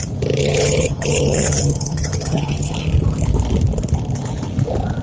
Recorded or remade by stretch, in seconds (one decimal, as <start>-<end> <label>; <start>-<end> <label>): 0.0-0.4 recorded; 0.4-2.7 remade; 2.7-5.0 recorded